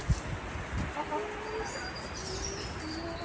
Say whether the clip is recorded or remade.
recorded